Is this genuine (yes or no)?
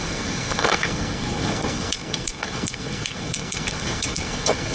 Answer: no